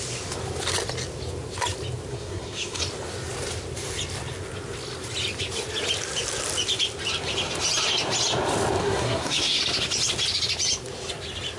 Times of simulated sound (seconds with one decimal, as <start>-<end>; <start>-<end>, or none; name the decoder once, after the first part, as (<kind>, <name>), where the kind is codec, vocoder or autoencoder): 2.1-2.8 (codec, SNAC); 8.8-9.6